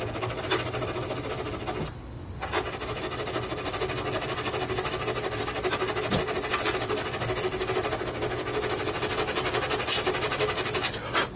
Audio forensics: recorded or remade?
recorded